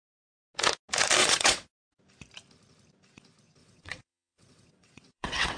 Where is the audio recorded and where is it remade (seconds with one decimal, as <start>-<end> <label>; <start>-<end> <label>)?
0.0-1.2 recorded; 1.2-1.7 remade; 1.7-3.6 recorded; 3.6-5.6 remade